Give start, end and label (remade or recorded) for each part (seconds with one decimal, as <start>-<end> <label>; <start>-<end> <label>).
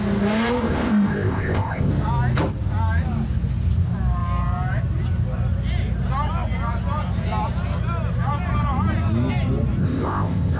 0.0-0.6 recorded; 0.6-1.9 remade; 1.9-9.8 recorded; 9.8-10.6 remade